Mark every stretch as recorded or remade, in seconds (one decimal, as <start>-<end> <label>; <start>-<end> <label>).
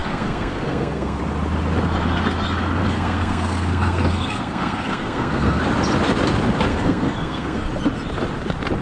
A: 0.0-1.2 remade; 1.2-2.8 recorded; 2.8-5.6 remade; 5.6-6.7 recorded; 6.7-7.7 remade; 7.7-8.8 recorded